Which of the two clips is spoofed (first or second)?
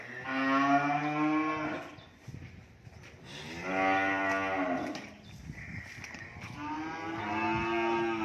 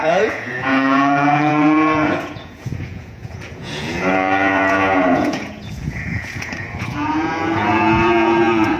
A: second